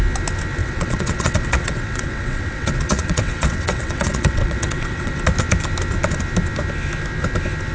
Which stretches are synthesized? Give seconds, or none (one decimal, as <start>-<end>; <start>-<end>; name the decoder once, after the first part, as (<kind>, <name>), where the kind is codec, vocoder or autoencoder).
0.6-5.2 (vocoder, WaveNeXt)